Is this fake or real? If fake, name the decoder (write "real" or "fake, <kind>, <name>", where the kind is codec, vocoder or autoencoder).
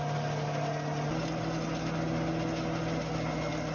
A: real